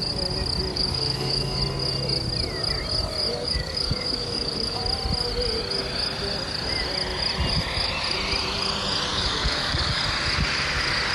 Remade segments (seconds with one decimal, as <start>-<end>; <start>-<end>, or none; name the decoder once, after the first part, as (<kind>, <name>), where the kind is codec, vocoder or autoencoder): 0.7-1.6 (codec, DAC); 3.3-4.8; 9.1-10.0